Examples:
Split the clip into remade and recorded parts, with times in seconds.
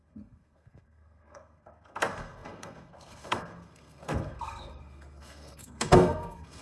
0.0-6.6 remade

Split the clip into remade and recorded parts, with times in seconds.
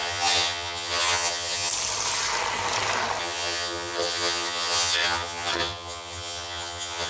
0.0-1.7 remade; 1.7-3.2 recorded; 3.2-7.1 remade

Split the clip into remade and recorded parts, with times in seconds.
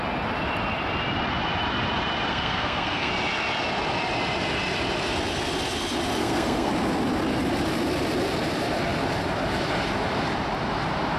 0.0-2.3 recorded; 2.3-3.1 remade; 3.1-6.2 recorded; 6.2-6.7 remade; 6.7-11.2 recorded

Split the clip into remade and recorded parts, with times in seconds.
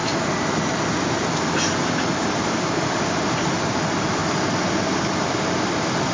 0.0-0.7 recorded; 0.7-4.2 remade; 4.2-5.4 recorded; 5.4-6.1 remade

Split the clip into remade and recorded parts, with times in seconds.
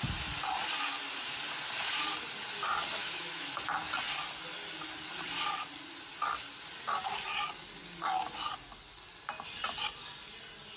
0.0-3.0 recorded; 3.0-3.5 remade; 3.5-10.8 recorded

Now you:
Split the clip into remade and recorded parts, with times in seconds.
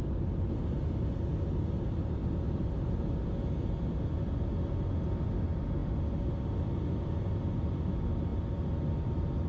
0.0-9.5 recorded